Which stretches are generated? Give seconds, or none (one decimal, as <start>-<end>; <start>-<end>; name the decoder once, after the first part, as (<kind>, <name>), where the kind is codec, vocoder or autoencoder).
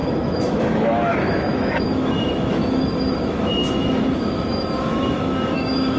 0.0-6.0 (autoencoder, DAC-VAE)